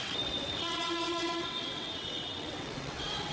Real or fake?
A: fake